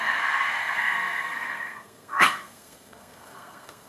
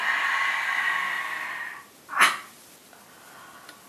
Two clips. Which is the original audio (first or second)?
second